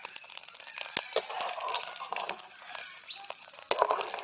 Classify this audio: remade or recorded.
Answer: remade